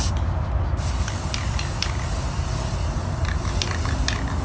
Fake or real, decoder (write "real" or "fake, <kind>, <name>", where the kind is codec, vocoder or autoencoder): real